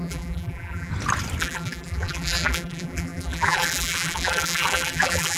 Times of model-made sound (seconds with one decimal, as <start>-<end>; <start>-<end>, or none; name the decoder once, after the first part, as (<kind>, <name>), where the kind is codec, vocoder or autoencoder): 0.0-0.9 (vocoder, BigVGAN v2); 1.4-5.4